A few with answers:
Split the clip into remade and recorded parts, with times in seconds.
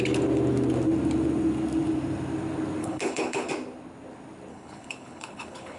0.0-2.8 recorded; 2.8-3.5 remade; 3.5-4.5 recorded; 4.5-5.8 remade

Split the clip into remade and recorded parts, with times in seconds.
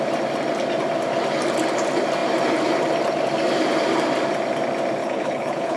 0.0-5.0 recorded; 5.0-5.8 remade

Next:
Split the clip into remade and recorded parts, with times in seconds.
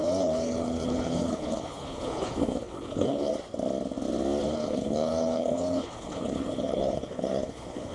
0.0-3.3 remade; 3.3-4.4 recorded; 4.4-7.9 remade